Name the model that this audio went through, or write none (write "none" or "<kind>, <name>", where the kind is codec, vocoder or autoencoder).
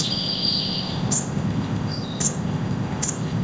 codec, ZipCodec